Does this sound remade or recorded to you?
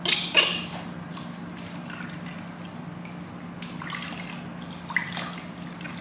recorded